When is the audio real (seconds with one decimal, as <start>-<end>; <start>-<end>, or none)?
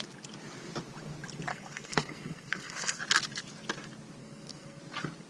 0.0-1.5; 3.0-4.2; 4.8-5.3